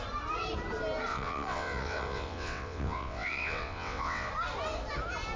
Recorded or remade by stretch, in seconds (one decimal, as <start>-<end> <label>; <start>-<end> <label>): 0.0-1.1 recorded; 1.1-4.3 remade; 4.3-5.4 recorded